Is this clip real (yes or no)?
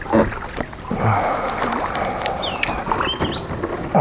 yes